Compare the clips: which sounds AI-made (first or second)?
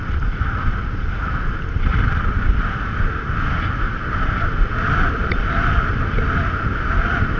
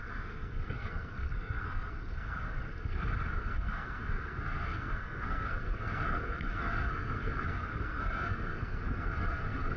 second